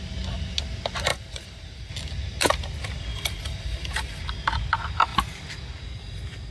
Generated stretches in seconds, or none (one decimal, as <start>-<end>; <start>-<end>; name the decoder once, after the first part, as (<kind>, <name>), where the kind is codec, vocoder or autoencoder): 1.1-1.9 (vocoder, BigVGAN v2); 3.1-4.2